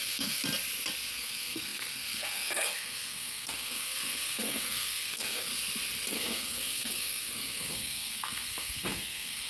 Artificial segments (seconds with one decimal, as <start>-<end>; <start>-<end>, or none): 0.0-0.4; 1.1-5.5; 6.1-9.5